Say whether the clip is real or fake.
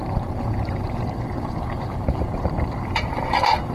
fake